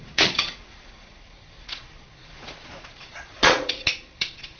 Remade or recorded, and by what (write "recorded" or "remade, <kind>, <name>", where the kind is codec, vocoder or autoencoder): remade, vocoder, Vocos